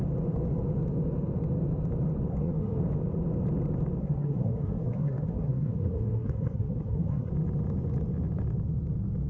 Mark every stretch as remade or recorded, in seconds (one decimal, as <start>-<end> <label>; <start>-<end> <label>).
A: 0.0-2.3 recorded; 2.3-2.8 remade; 2.8-4.0 recorded; 4.0-7.3 remade; 7.3-9.3 recorded